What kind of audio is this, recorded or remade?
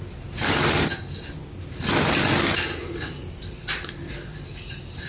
recorded